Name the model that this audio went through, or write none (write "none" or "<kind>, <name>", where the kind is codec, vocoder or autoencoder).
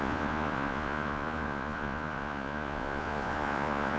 vocoder, Vocos